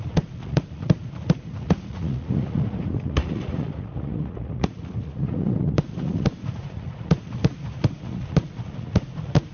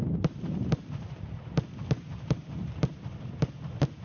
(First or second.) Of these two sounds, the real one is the second